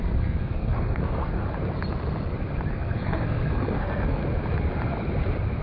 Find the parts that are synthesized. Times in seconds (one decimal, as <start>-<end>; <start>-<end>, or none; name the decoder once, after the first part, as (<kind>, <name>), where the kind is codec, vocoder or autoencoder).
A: 0.0-1.4 (codec, SNAC); 2.7-4.2